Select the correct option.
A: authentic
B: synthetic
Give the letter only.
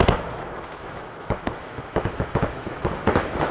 B